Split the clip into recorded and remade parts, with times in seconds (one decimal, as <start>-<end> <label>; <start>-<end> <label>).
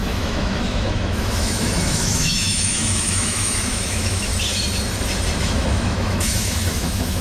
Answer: 0.0-4.3 remade; 4.3-5.4 recorded; 5.4-7.2 remade